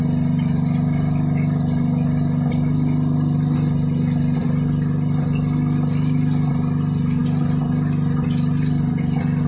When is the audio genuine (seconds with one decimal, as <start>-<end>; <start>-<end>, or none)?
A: 0.0-9.5